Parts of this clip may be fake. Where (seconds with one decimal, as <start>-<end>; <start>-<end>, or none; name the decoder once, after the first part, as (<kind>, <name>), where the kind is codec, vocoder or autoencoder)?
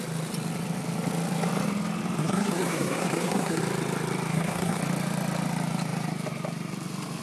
2.2-3.6 (codec, SNAC); 4.3-4.8